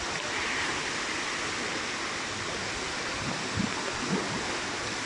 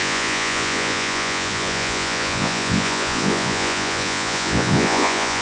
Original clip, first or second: first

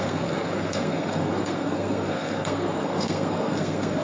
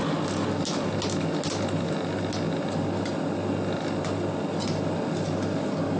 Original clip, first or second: second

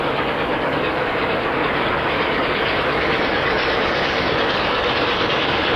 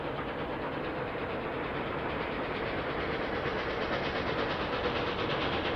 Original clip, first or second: second